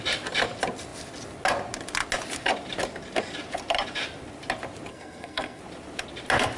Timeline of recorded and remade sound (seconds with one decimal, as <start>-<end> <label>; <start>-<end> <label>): 0.0-4.9 recorded; 4.9-5.6 remade; 5.6-6.6 recorded